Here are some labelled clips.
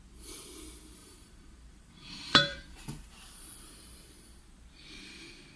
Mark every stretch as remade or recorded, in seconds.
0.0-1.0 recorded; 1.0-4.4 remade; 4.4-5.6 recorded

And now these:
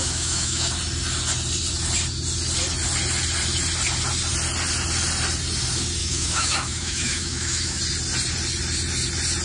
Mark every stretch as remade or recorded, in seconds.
0.0-0.7 remade; 0.7-6.0 recorded; 6.0-7.8 remade; 7.8-9.4 recorded

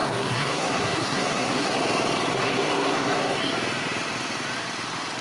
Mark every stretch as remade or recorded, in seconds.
0.0-1.8 remade; 1.8-2.3 recorded; 2.3-3.5 remade; 3.5-5.2 recorded